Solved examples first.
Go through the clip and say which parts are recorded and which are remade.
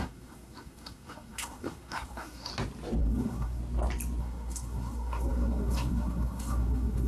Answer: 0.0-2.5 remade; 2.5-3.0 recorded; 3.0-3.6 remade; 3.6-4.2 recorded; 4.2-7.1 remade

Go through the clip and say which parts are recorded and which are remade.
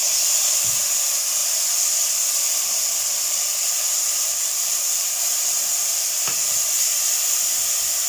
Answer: 0.0-4.3 recorded; 4.3-5.3 remade; 5.3-8.1 recorded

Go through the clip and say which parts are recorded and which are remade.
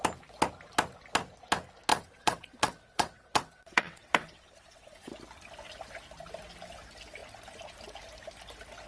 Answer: 0.0-1.9 recorded; 1.9-5.1 remade; 5.1-8.9 recorded